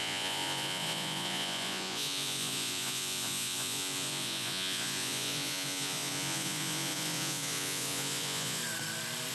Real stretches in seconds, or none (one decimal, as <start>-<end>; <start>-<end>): 8.6-9.3